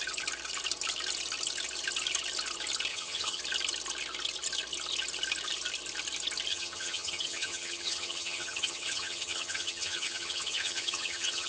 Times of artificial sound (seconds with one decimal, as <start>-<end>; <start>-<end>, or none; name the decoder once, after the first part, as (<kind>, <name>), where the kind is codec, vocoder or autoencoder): 2.9-3.4 (vocoder, HiFi-GAN); 6.5-11.5